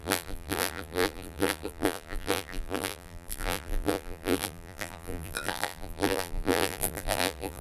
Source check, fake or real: fake